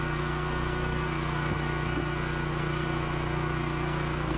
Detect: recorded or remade remade